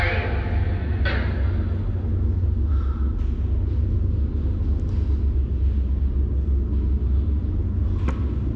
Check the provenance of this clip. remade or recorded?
recorded